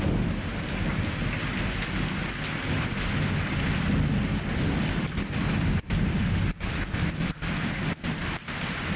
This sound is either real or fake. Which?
real